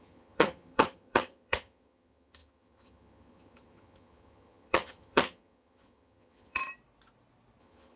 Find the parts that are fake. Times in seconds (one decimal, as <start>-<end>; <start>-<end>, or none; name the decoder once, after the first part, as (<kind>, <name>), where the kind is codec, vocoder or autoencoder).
0.0-6.6 (vocoder, HiFi-GAN); 7.6-8.0